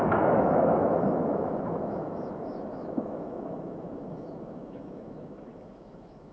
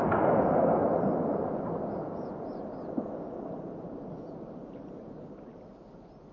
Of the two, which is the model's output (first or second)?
first